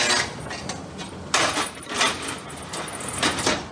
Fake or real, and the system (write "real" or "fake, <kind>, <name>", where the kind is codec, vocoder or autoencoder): real